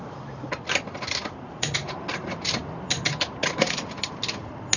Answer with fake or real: real